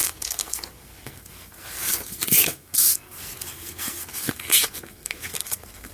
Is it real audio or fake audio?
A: fake